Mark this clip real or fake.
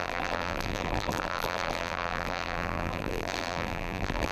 fake